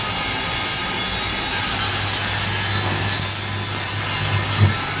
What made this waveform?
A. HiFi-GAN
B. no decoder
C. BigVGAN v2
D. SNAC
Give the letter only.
B